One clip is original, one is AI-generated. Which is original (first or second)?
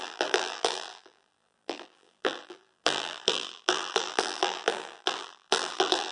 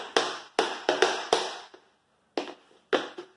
second